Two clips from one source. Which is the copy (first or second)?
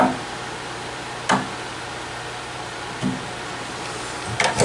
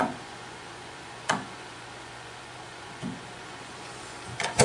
second